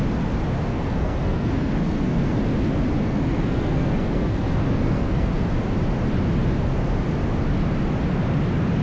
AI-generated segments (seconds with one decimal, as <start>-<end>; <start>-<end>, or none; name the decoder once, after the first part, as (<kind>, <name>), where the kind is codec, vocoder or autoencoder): 0.7-2.4 (codec, SNAC); 3.0-5.3